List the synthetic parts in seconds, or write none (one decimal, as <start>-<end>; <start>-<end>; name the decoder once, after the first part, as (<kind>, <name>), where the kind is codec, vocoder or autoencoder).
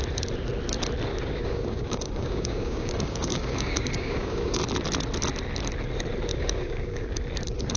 1.1-4.6 (codec, DAC); 6.3-7.2